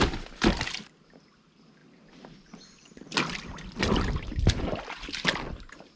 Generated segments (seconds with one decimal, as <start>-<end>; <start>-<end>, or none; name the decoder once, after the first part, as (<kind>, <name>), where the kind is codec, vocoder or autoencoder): none